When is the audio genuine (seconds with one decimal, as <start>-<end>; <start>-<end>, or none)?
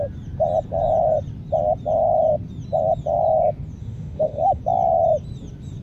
0.0-3.8; 4.6-5.8